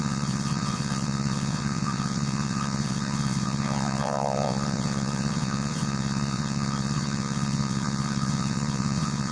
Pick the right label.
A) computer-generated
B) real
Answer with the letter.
A